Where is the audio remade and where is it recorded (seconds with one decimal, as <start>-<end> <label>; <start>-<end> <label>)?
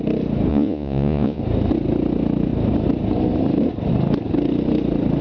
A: 0.0-0.5 recorded; 0.5-1.4 remade; 1.4-5.2 recorded